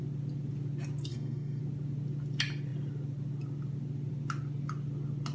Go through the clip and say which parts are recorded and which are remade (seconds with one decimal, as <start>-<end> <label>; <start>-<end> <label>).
0.0-1.1 recorded; 1.1-1.6 remade; 1.6-5.3 recorded